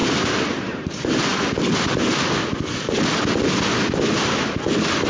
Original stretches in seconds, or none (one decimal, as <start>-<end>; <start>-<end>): 0.9-5.1